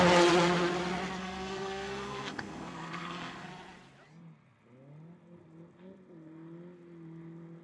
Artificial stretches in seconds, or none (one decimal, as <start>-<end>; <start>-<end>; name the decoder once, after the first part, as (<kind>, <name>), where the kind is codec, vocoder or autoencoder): 1.2-3.5 (codec, SNAC)